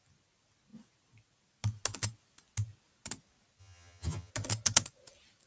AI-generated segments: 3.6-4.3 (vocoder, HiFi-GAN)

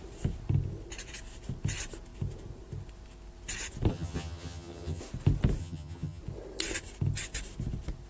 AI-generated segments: 3.9-5.0 (vocoder, HiFi-GAN); 5.6-6.2

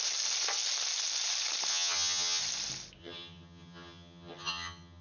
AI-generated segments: 1.7-2.4 (vocoder, HiFi-GAN); 3.0-5.0

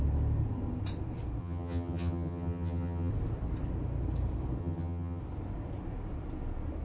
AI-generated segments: 1.4-3.1 (vocoder, HiFi-GAN); 4.6-5.2